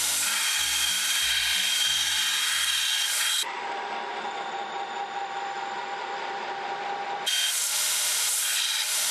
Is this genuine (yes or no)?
no